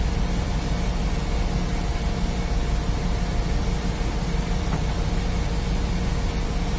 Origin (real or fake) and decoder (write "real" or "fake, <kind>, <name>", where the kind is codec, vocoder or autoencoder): real